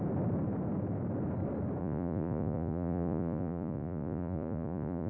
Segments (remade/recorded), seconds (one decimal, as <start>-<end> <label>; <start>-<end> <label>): 0.0-1.8 recorded; 1.8-5.1 remade